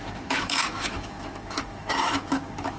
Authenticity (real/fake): fake